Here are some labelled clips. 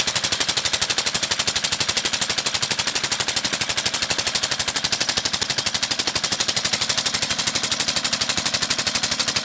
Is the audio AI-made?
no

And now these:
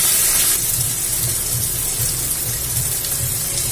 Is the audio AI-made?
no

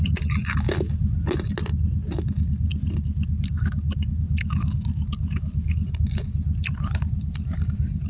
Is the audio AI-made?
no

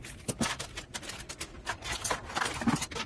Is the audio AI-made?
no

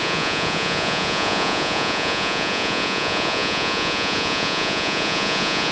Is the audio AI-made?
yes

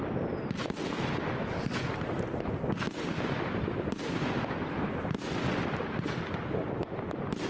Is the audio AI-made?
no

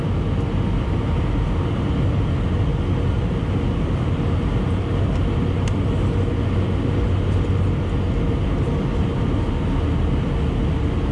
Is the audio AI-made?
no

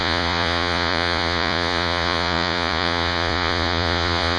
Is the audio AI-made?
yes